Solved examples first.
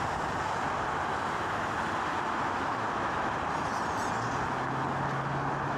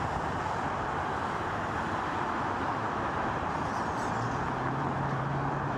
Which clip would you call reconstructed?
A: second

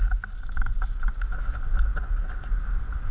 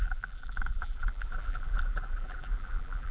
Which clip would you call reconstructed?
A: second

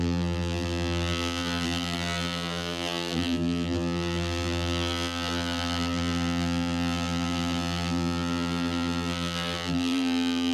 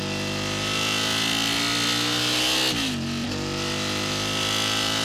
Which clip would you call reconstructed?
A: first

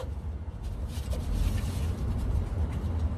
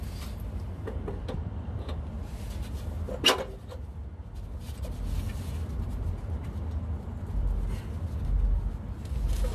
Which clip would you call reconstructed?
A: first